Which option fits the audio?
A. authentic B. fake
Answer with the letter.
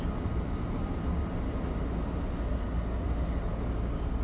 A